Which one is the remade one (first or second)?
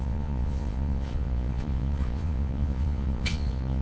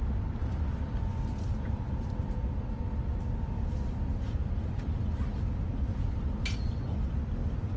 first